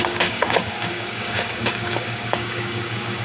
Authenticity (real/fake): fake